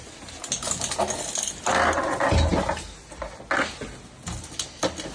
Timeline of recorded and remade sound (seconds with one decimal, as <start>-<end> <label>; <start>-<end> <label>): 0.0-5.1 recorded